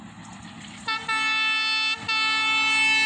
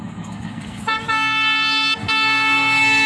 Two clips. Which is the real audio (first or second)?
first